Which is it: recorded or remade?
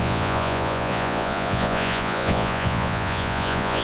remade